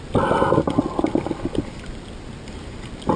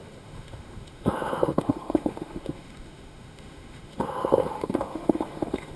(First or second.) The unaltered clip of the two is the first